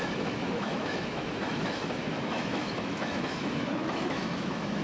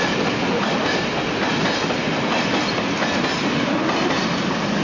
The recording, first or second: second